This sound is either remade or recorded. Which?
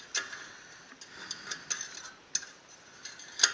recorded